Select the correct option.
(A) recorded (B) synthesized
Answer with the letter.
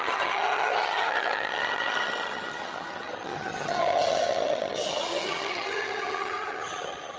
B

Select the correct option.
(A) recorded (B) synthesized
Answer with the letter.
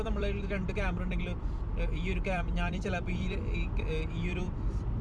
B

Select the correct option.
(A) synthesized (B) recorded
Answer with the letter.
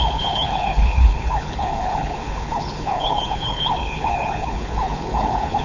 A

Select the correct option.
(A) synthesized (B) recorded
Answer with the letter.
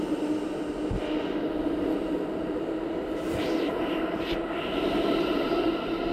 B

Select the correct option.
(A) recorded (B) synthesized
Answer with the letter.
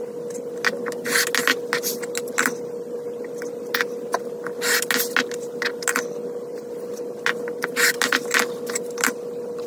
A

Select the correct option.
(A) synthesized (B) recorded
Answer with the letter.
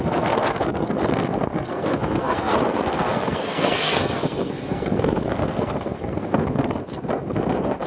A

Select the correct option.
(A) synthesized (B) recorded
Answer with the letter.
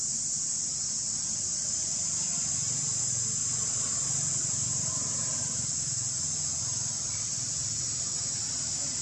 B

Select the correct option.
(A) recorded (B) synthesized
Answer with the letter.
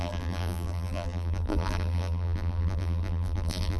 B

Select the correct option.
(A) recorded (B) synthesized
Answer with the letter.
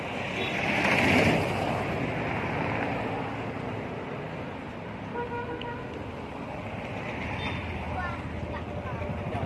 A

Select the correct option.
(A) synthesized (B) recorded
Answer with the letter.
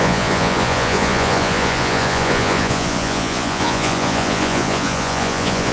A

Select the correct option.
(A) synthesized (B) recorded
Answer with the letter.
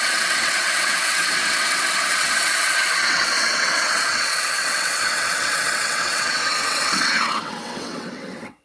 A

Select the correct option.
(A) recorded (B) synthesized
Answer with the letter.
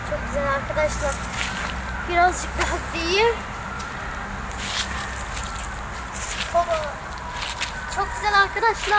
A